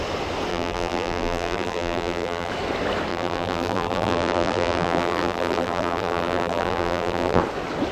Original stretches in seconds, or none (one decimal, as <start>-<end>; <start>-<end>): 0.0-0.5; 2.5-3.1; 7.4-7.9